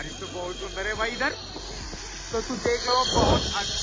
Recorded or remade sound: recorded